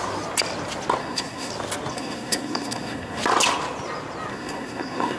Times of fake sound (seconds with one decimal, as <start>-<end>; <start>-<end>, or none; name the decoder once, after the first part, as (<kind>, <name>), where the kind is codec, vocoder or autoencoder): 1.0-1.5 (codec, SNAC); 1.9-3.2; 4.3-5.2